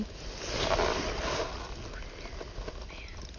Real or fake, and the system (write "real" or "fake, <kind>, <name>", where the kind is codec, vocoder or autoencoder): real